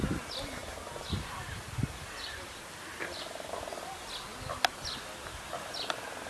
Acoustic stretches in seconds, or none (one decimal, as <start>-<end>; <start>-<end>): 0.0-0.6; 3.5-6.3